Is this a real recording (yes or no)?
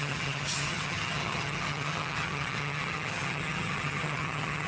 no